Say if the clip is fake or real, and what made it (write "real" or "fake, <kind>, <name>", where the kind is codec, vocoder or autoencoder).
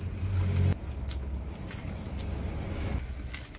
real